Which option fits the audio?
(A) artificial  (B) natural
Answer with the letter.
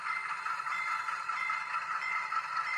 B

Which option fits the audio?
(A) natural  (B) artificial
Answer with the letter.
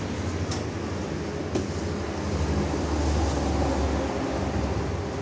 A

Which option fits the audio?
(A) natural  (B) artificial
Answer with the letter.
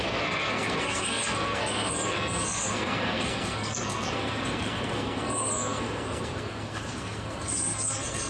B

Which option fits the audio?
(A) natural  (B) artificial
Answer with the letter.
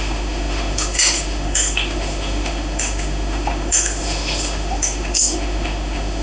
B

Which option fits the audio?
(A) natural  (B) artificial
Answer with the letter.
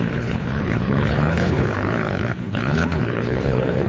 B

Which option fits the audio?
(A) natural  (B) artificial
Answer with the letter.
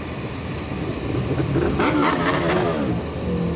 A